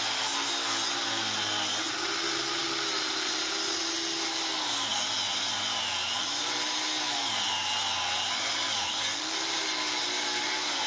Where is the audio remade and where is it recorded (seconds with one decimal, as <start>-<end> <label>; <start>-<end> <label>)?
0.0-10.9 recorded